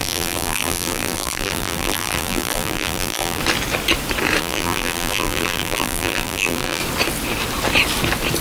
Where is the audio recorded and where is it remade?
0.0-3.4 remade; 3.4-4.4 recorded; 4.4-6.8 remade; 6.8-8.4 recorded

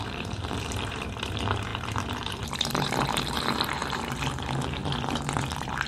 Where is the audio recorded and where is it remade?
0.0-4.8 remade; 4.8-5.4 recorded; 5.4-5.9 remade

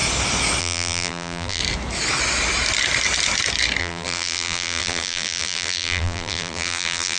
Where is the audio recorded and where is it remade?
0.0-0.6 recorded; 0.6-1.6 remade; 1.6-3.8 recorded; 3.8-7.2 remade

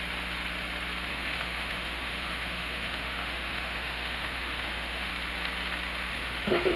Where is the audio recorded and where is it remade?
0.0-1.1 recorded; 1.1-5.1 remade; 5.1-6.1 recorded; 6.1-6.8 remade

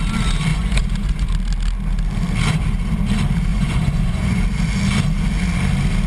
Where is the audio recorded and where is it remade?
0.0-0.5 recorded; 0.5-1.3 remade; 1.3-3.5 recorded; 3.5-4.4 remade; 4.4-6.1 recorded

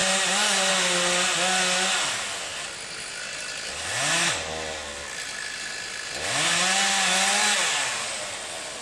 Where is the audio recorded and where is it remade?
0.0-8.8 recorded